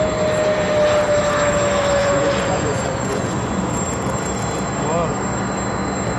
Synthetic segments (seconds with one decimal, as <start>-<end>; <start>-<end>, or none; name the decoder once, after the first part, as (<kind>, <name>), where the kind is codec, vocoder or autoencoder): 2.0-3.7 (vocoder, Vocos)

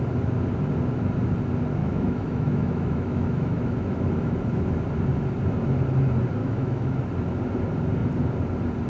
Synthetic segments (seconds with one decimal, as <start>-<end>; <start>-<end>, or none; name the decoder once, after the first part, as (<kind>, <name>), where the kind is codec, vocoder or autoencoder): 1.8-4.8 (autoencoder, DAC-VAE); 6.4-7.0

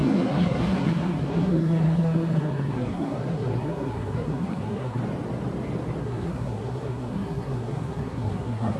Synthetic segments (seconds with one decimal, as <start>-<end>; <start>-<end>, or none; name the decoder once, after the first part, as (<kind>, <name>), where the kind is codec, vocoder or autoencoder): 0.0-5.0 (codec, SNAC); 6.0-8.8

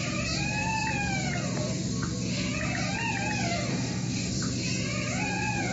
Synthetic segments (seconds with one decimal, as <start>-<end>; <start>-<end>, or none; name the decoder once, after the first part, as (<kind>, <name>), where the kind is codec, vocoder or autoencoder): 3.7-4.3 (codec, DAC)

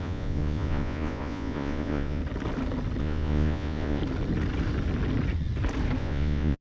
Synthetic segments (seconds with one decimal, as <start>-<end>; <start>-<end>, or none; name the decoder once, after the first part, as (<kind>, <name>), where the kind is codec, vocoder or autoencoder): 0.0-2.2 (vocoder, Vocos); 3.0-4.0; 6.0-6.6